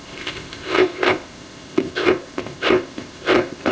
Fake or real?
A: fake